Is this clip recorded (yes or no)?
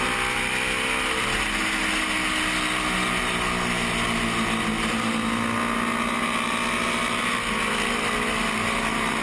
yes